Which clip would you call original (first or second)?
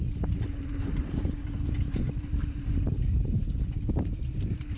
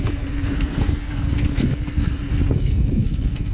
first